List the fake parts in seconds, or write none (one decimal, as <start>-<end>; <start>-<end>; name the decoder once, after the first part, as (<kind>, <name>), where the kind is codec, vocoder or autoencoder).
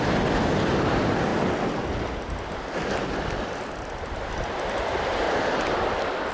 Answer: none